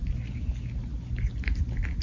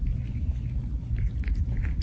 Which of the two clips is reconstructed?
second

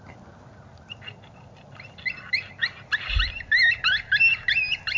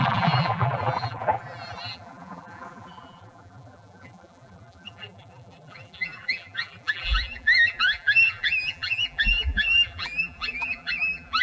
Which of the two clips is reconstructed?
second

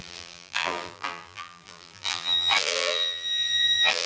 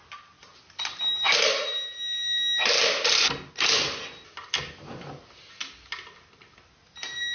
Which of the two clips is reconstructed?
first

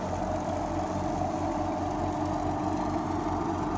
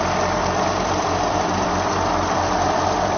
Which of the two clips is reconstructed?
second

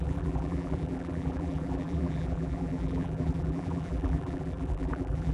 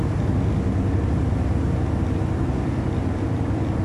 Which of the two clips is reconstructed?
first